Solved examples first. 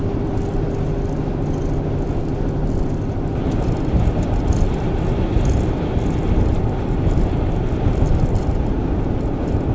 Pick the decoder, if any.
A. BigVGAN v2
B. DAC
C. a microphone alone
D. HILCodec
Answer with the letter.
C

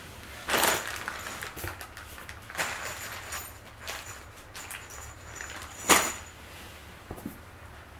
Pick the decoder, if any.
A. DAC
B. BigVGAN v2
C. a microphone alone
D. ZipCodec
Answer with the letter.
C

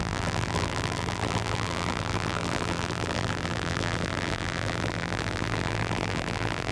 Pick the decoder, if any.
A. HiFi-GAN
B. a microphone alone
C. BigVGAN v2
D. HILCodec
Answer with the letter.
C